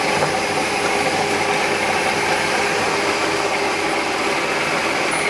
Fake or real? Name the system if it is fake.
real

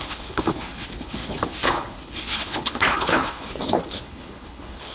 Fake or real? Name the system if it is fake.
fake, codec, HILCodec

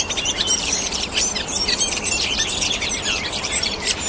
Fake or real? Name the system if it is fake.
fake, vocoder, BigVGAN v2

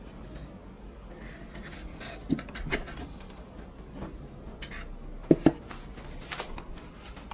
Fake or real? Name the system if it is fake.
real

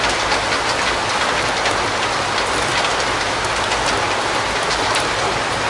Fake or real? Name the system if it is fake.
real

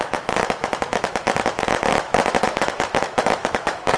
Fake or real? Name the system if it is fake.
fake, autoencoder, DAC-VAE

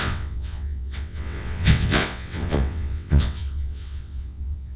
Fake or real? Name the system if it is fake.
fake, vocoder, WaveNeXt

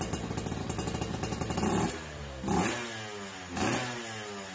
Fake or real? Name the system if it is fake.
real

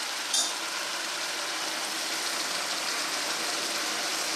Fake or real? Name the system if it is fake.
real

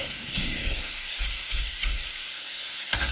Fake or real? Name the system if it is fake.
fake, codec, SNAC